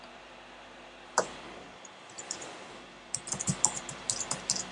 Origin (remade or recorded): remade